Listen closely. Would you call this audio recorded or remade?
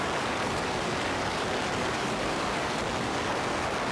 remade